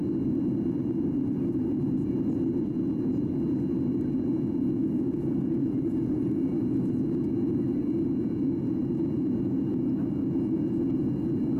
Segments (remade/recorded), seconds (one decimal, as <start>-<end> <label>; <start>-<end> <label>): 0.0-4.8 recorded; 4.8-6.5 remade; 6.5-11.6 recorded